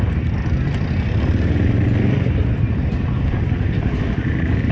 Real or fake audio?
real